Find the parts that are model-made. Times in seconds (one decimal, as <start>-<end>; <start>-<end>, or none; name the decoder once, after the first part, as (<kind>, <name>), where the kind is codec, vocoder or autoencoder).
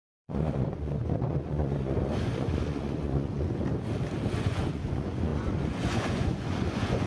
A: 0.0-3.6 (vocoder, Vocos); 4.3-7.1